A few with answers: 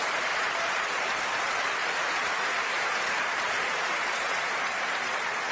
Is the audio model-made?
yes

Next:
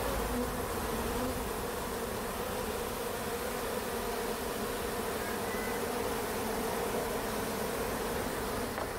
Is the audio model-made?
no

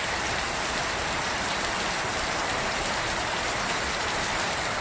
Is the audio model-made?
yes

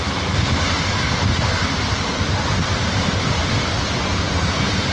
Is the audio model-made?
yes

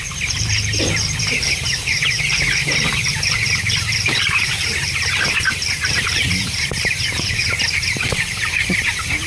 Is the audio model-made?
yes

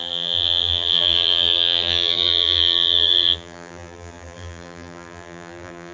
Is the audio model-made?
yes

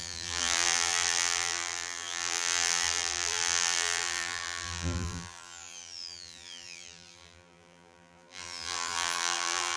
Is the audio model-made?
yes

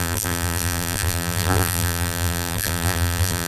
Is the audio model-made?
yes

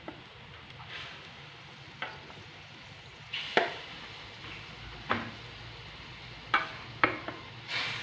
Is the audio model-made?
no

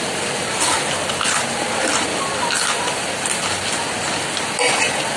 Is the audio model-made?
no